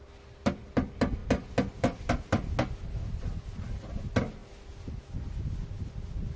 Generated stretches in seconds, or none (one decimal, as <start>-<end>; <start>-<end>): none